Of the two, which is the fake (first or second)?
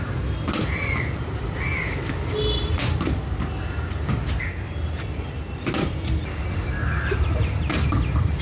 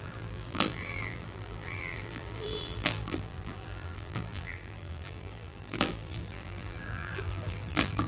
second